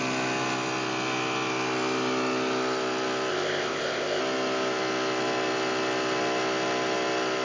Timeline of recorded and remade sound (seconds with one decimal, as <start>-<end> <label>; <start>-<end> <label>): 0.0-3.3 recorded; 3.3-4.2 remade; 4.2-7.4 recorded

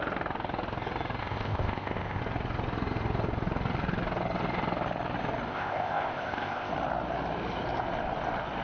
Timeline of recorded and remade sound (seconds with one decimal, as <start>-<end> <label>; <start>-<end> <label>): 0.0-1.2 recorded; 1.2-2.2 remade; 2.2-5.5 recorded; 5.5-6.7 remade; 6.7-8.6 recorded